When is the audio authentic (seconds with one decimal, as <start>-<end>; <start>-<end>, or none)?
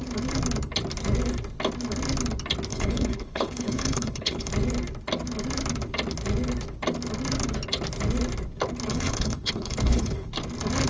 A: 0.0-2.7; 4.5-8.9; 10.3-10.9